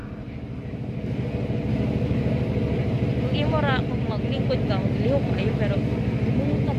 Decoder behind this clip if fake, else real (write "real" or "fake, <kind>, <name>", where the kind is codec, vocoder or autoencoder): real